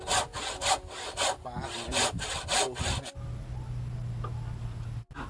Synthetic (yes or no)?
no